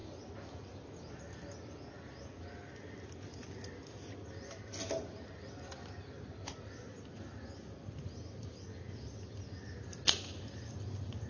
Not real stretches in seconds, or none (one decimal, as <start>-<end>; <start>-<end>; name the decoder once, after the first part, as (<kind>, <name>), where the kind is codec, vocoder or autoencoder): none